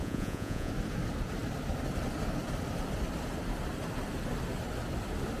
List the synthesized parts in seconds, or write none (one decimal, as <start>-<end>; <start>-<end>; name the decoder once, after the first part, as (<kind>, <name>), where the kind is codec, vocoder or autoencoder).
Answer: 0.0-0.7 (vocoder, Vocos)